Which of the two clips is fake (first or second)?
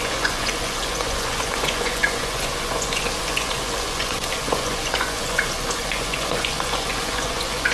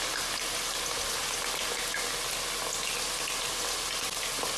first